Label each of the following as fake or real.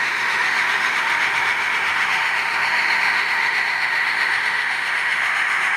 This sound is fake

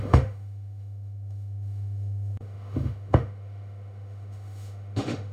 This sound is fake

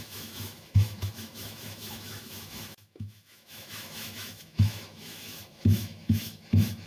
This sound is fake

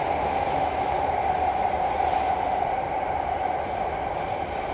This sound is real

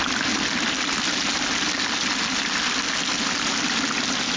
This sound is real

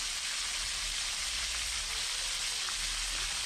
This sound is real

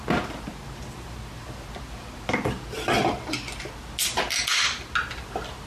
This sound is real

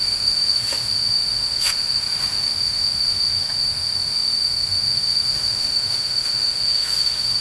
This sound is fake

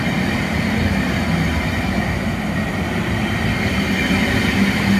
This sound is real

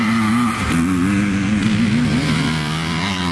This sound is real